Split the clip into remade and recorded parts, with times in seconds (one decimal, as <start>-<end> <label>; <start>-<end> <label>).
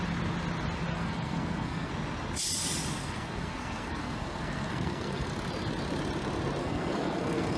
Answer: 0.0-0.9 recorded; 0.9-1.9 remade; 1.9-3.0 recorded; 3.0-5.3 remade; 5.3-6.6 recorded; 6.6-7.6 remade